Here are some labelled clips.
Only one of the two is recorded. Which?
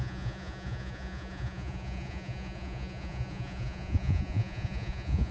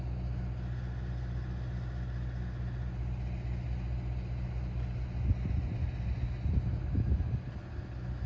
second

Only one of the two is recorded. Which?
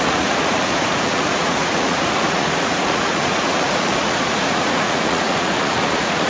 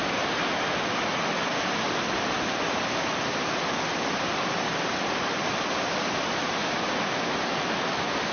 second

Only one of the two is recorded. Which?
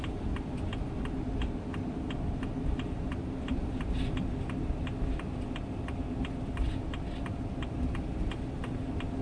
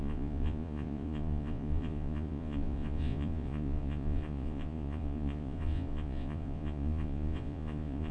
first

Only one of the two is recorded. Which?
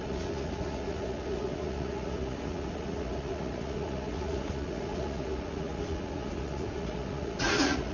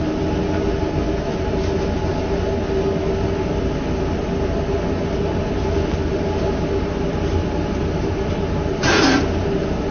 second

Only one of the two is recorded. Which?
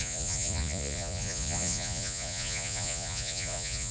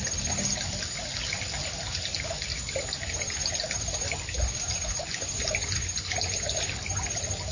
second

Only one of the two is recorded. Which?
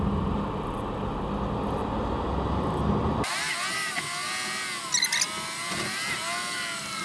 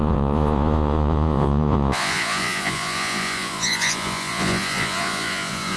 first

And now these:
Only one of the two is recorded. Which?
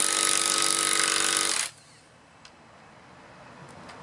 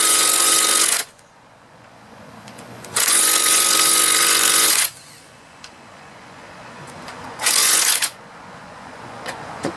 first